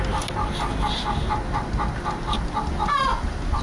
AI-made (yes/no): no